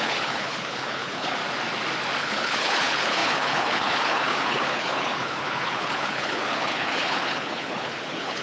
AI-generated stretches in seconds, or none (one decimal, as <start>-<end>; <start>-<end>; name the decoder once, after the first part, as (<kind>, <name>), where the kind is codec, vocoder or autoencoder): 0.0-1.4 (codec, HILCodec); 2.2-8.4